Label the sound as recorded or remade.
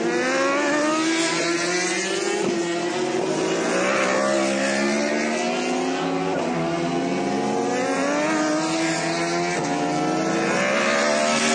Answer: recorded